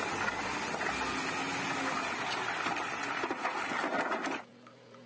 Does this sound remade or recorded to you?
recorded